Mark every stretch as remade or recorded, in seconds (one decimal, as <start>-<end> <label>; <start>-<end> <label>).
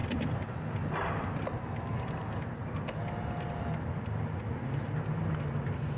0.0-6.0 recorded